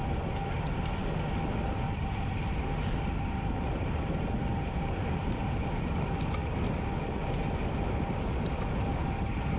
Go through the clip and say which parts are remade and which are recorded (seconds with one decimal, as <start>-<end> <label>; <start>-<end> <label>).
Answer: 0.0-9.6 recorded